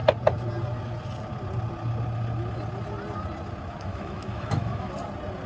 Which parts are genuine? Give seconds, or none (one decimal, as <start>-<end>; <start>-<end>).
0.0-3.9; 4.9-5.5